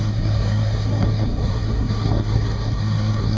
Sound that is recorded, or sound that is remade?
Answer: remade